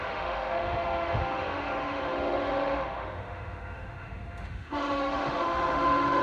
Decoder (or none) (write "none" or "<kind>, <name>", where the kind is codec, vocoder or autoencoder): autoencoder, DAC-VAE